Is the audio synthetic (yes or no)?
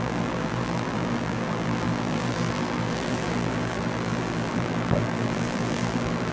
yes